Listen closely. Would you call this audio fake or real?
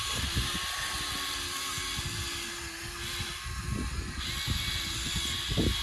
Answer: real